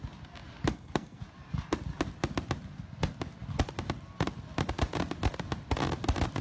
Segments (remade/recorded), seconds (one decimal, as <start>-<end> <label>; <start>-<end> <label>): 0.0-0.7 recorded; 0.7-1.2 remade; 1.2-6.4 recorded